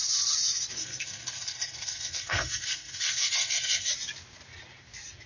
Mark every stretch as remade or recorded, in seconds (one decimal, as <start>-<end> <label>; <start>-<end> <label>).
0.0-0.8 recorded; 0.8-3.9 remade; 3.9-5.3 recorded